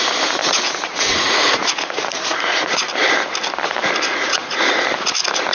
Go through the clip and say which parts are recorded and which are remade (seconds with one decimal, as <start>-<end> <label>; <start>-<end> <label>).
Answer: 0.0-0.4 recorded; 0.4-2.9 remade; 2.9-4.1 recorded; 4.1-4.7 remade; 4.7-5.5 recorded